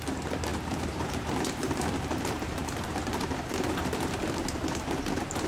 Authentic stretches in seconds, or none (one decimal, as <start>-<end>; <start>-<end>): none

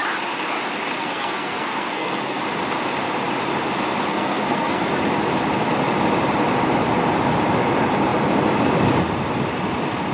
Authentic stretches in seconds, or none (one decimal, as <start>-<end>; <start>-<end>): 0.0-1.0; 2.4-4.1; 4.8-10.1

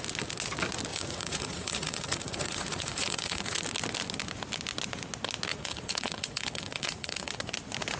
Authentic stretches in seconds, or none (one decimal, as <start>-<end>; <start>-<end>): 0.0-0.9; 3.6-5.5; 7.3-8.0